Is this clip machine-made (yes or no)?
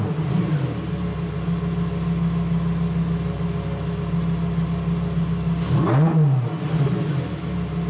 no